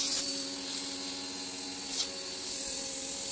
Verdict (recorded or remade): recorded